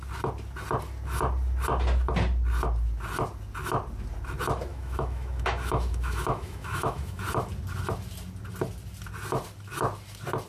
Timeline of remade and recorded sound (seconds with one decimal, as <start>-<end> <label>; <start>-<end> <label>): 0.0-4.7 recorded; 4.7-7.2 remade; 7.2-10.5 recorded